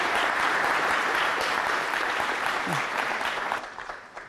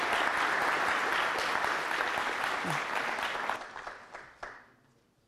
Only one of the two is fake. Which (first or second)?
first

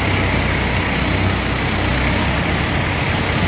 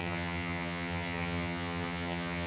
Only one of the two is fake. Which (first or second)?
second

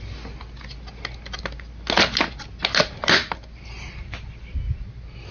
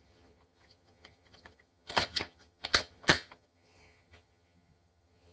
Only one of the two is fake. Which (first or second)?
second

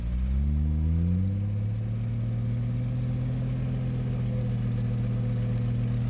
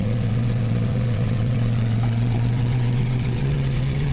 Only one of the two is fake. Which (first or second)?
second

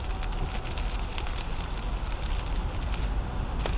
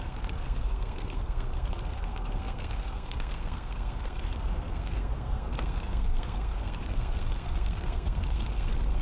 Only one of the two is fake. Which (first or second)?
second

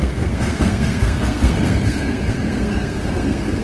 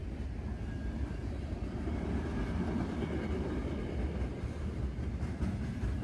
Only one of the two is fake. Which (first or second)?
first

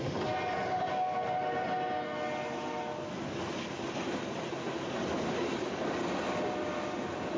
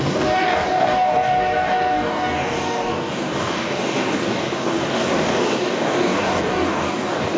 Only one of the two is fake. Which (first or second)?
second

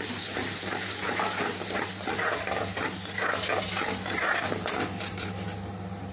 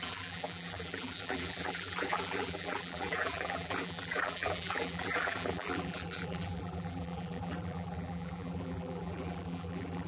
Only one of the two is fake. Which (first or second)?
second